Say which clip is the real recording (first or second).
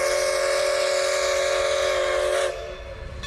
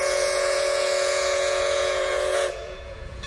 first